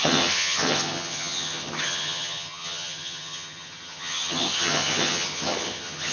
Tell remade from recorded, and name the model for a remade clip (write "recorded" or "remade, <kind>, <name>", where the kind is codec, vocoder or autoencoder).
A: remade, vocoder, HiFi-GAN